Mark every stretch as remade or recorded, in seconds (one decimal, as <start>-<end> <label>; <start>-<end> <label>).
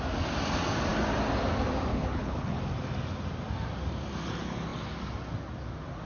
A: 0.0-1.9 recorded; 1.9-2.6 remade; 2.6-6.1 recorded